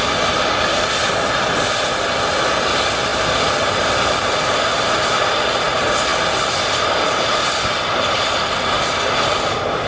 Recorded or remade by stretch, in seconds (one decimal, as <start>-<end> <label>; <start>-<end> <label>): 0.0-9.9 recorded